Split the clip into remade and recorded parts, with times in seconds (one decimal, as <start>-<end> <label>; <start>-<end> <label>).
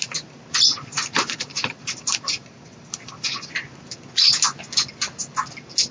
0.0-0.7 recorded; 0.7-3.5 remade; 3.5-5.9 recorded